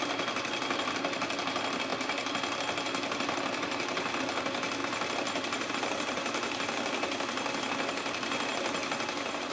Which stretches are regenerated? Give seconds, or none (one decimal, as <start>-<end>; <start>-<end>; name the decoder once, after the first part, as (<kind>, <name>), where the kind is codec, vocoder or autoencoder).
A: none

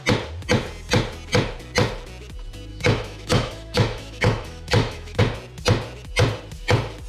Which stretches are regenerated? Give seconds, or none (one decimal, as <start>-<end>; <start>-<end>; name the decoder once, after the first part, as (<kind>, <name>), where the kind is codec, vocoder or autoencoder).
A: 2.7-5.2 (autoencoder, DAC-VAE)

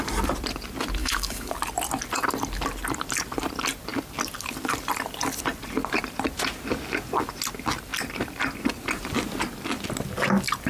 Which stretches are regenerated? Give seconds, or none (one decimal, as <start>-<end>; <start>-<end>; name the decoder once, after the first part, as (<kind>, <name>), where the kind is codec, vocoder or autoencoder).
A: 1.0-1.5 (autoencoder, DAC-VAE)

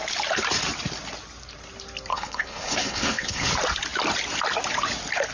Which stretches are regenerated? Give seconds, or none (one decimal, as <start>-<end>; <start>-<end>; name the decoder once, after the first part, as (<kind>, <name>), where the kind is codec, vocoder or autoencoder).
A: 2.1-3.5 (codec, HILCodec)

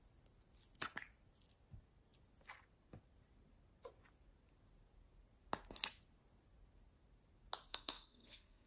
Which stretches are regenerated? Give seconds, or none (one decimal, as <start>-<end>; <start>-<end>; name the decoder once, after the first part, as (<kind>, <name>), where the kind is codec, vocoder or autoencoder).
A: 7.7-8.7 (codec, SNAC)

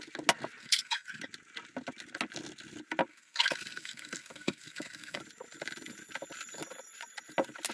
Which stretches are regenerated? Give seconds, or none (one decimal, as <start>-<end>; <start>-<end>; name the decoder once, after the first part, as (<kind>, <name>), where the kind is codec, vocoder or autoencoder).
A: 0.6-1.2 (codec, SNAC); 3.1-5.2